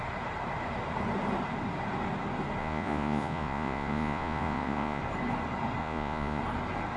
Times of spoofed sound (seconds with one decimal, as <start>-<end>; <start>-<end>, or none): 2.6-5.0; 5.8-6.4